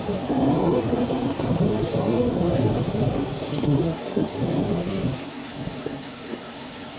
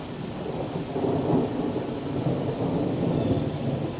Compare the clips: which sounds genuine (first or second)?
second